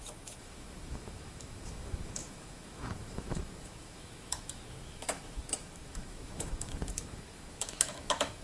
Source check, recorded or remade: remade